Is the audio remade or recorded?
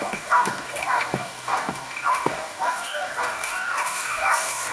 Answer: remade